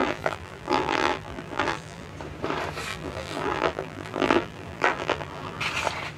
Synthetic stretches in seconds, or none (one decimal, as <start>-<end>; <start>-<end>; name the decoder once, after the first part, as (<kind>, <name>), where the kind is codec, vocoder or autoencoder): 0.0-2.1 (vocoder, BigVGAN v2); 2.9-5.6